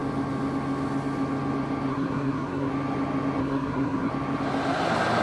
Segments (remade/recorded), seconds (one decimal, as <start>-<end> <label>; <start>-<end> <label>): 0.0-1.9 recorded; 1.9-2.7 remade; 2.7-3.4 recorded; 3.4-4.1 remade; 4.1-5.2 recorded

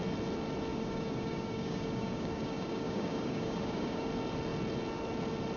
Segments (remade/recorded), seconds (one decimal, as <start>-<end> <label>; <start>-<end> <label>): 0.0-0.7 recorded; 0.7-4.1 remade; 4.1-5.6 recorded

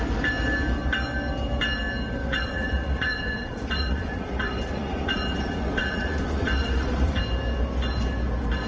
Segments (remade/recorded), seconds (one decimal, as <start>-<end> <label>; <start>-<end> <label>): 0.0-2.2 recorded; 2.2-7.2 remade; 7.2-8.7 recorded

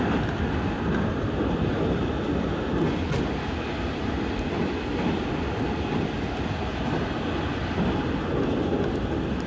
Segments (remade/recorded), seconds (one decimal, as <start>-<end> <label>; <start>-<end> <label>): 0.0-9.5 recorded

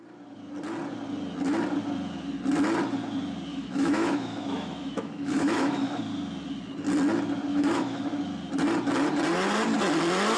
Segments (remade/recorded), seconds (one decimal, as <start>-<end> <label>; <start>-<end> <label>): 0.0-3.5 recorded; 3.5-6.0 remade; 6.0-7.5 recorded; 7.5-8.0 remade; 8.0-10.4 recorded

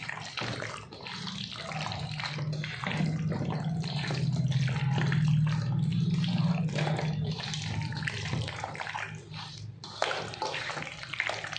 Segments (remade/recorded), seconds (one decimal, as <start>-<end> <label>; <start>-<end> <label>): 0.0-11.6 recorded

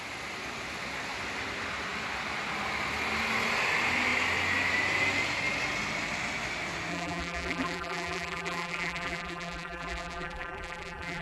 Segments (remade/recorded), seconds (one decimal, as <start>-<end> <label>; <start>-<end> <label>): 0.0-6.9 recorded; 6.9-11.2 remade